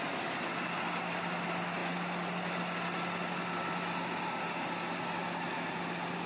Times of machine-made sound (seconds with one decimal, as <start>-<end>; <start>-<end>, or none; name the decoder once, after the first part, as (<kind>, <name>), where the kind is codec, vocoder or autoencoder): none